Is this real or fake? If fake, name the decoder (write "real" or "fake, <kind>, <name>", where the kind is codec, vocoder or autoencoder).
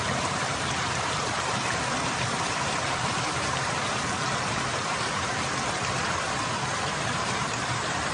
fake, vocoder, BigVGAN v2